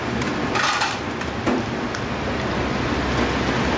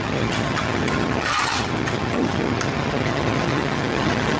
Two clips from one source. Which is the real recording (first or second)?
first